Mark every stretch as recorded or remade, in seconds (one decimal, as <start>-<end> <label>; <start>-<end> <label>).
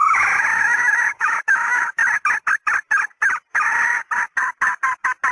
0.0-2.0 remade; 2.0-5.3 recorded